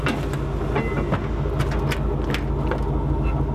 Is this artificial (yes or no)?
no